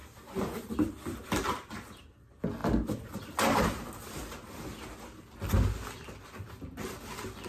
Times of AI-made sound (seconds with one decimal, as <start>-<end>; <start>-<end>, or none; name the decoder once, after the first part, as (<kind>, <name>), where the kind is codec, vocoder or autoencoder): none